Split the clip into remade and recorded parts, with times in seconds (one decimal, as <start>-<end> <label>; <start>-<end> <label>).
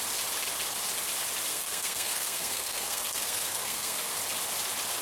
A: 0.0-1.5 recorded; 1.5-4.1 remade; 4.1-5.0 recorded